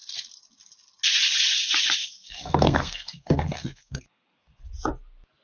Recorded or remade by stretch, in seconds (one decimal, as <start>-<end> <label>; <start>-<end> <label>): 0.0-2.0 recorded; 2.0-4.6 remade; 4.6-5.4 recorded